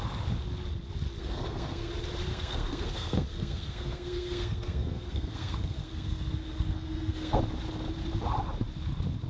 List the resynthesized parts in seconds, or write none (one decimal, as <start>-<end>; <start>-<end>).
1.2-1.9; 2.3-7.4